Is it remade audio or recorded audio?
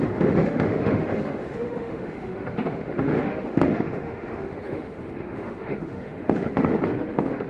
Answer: remade